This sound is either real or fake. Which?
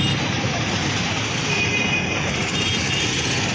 fake